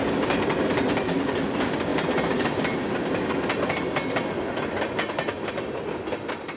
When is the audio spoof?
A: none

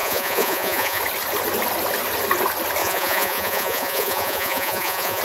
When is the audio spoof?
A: 0.0-1.0 (vocoder, Vocos); 2.8-5.2

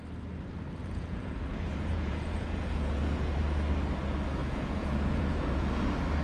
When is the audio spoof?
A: 0.8-3.4 (vocoder, Vocos); 4.4-5.8

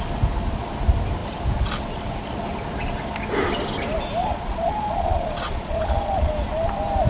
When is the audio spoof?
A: 4.2-6.3 (vocoder, Vocos)

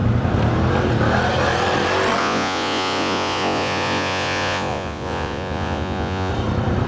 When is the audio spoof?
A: 2.2-6.3 (vocoder, Vocos)